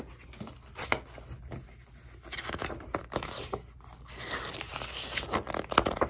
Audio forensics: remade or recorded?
recorded